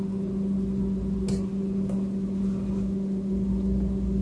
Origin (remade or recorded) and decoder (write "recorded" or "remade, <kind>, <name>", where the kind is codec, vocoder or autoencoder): recorded